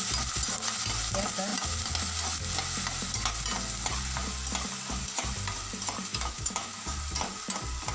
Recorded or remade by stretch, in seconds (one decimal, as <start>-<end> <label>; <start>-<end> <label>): 0.0-6.1 recorded; 6.1-6.8 remade; 6.8-7.9 recorded